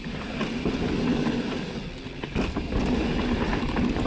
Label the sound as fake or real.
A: real